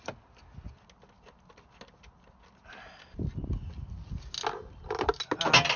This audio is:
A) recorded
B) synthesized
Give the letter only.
A